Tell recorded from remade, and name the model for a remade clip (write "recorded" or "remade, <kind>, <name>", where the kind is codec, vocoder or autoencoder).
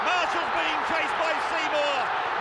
recorded